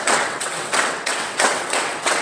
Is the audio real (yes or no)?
no